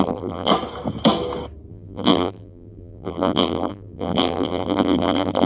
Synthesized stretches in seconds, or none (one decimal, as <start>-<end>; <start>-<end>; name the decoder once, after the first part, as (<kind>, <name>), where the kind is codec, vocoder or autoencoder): 0.0-0.5 (vocoder, BigVGAN v2); 1.7-5.5